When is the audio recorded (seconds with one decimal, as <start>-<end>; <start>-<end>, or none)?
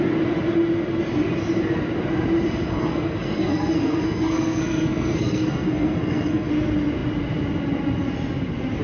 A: 0.0-2.7; 6.5-8.8